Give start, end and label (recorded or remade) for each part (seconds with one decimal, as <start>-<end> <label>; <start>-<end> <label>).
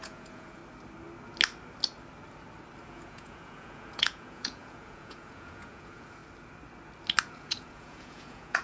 0.0-0.6 remade; 0.6-2.8 recorded; 2.8-6.2 remade; 6.2-7.2 recorded; 7.2-8.6 remade